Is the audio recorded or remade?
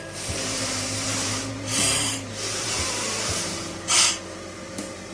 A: remade